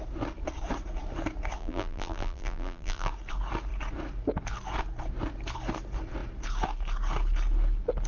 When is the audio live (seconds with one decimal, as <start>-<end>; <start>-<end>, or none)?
0.0-1.6; 3.1-8.1